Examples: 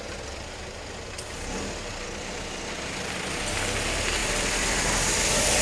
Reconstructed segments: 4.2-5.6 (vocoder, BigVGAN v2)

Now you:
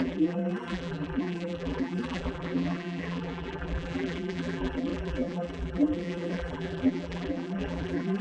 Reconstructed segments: 0.0-8.2 (vocoder, BigVGAN v2)